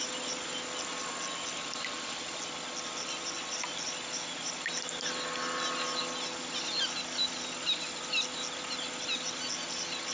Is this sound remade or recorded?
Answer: recorded